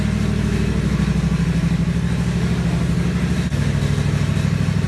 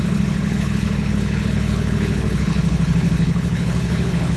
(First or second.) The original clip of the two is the first